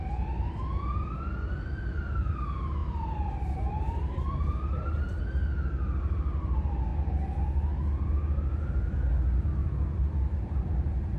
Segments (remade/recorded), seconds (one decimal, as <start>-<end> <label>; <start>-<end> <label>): 0.0-2.8 recorded; 2.8-5.2 remade; 5.2-9.6 recorded; 9.6-11.2 remade